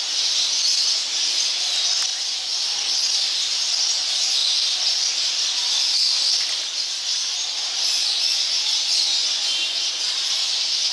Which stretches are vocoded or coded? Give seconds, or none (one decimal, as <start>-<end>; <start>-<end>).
2.1-2.6; 8.0-9.8

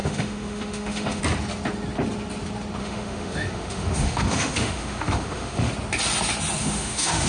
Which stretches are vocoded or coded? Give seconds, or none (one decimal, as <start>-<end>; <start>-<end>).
0.0-1.2; 2.8-5.7; 6.6-7.3

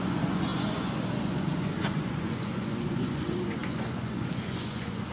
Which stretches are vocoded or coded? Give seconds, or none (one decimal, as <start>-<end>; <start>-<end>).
0.0-5.1